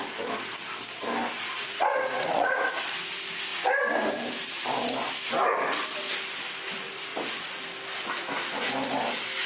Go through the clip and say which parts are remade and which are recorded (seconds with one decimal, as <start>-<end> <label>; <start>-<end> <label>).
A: 0.0-1.5 recorded; 1.5-2.9 remade; 2.9-7.1 recorded; 7.1-7.6 remade; 7.6-9.5 recorded

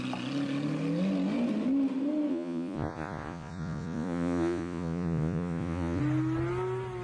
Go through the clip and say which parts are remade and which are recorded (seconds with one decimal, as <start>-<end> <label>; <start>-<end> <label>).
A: 0.0-2.3 recorded; 2.3-6.0 remade; 6.0-7.0 recorded